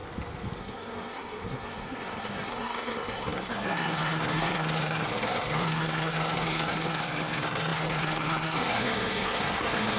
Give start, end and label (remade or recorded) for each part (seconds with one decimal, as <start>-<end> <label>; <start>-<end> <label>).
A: 0.0-0.6 recorded; 0.6-10.0 remade